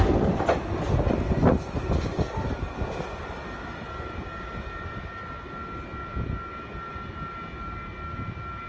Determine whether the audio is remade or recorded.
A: recorded